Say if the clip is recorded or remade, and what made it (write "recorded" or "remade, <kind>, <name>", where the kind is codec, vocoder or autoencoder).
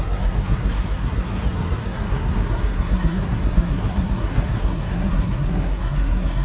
remade, codec, SNAC